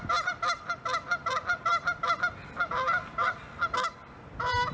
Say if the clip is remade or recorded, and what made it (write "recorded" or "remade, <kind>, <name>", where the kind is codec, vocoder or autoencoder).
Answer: remade, vocoder, BigVGAN v2